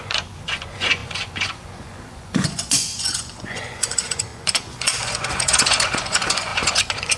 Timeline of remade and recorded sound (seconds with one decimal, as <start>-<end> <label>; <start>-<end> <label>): 0.0-7.2 remade